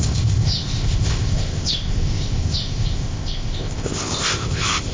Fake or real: fake